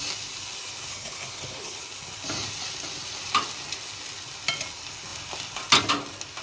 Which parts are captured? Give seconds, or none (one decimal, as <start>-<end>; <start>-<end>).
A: 0.0-0.9; 1.8-6.4

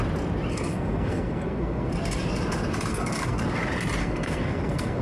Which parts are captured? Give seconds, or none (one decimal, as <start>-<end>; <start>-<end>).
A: 0.0-0.5; 1.9-2.9; 3.4-4.0

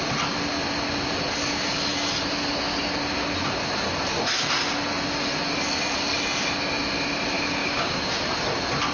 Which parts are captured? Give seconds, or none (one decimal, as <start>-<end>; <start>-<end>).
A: 0.0-7.6; 8.1-8.9

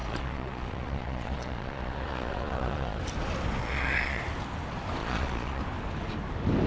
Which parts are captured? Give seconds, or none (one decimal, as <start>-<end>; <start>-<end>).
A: 3.0-3.6; 4.2-5.0; 5.6-6.7

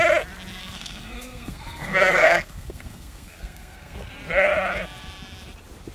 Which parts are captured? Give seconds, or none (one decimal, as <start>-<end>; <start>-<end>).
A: 0.0-0.6; 4.1-5.9

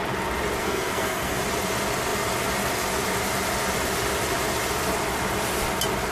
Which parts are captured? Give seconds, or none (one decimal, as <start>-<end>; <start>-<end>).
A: 0.0-0.6; 1.4-6.1

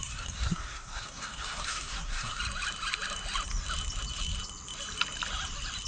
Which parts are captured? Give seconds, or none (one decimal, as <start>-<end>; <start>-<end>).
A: 2.4-5.9

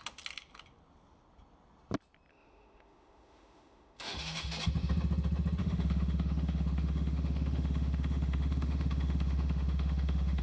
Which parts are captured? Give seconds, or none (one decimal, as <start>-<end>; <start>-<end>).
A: 0.0-2.3; 4.5-5.6